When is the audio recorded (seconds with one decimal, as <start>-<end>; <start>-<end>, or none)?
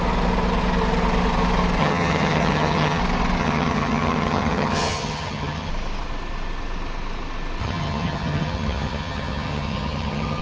0.0-1.8; 3.0-3.4; 5.7-7.6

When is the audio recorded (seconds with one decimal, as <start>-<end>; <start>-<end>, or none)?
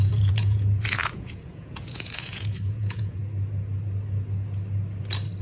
3.2-5.4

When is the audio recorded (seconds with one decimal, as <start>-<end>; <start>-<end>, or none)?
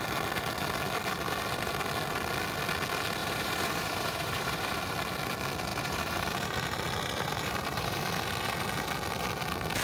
0.0-3.2; 4.8-5.7; 8.0-9.8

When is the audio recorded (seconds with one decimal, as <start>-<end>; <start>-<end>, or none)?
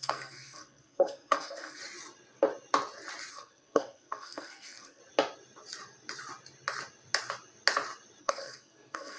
1.8-3.3; 5.0-8.2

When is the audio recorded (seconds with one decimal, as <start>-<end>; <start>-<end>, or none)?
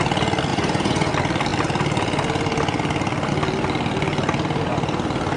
0.0-0.5; 1.1-5.4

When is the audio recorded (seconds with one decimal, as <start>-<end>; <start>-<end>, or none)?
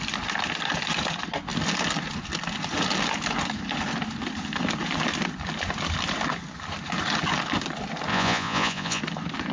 0.0-8.1; 9.0-9.5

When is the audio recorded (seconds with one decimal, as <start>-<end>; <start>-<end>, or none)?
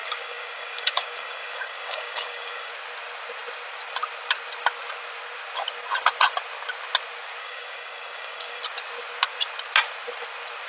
2.7-7.4; 8.6-10.7